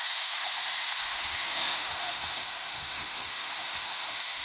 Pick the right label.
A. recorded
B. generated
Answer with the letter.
B